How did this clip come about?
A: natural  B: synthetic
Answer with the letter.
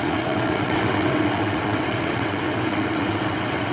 B